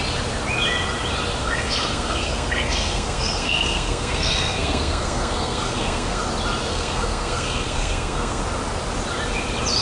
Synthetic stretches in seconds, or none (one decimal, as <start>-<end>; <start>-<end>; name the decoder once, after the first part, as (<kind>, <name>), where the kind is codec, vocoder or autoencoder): 1.4-6.2 (codec, SNAC); 6.7-8.4